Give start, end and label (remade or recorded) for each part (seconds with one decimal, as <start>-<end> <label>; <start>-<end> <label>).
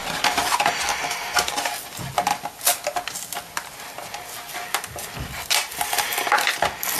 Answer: 0.0-0.6 remade; 0.6-7.0 recorded